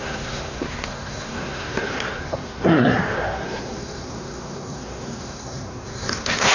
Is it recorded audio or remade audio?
remade